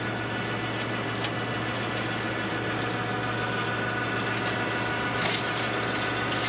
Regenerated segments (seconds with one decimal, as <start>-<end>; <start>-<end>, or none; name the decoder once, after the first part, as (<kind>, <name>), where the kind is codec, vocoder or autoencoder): none